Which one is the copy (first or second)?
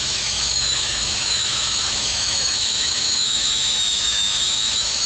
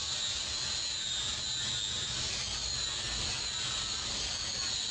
first